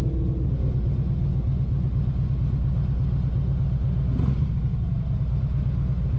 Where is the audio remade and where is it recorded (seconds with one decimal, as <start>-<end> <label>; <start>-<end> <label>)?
0.0-6.2 recorded

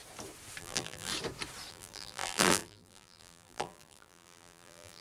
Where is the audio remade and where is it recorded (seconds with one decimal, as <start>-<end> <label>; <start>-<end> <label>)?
0.0-0.6 recorded; 0.6-1.1 remade; 1.1-1.7 recorded; 1.7-5.0 remade

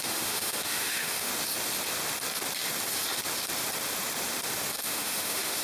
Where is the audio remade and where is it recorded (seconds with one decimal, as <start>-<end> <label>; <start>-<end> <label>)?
0.0-1.3 remade; 1.3-4.7 recorded; 4.7-5.6 remade